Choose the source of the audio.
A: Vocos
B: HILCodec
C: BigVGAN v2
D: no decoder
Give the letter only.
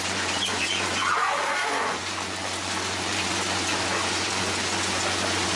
A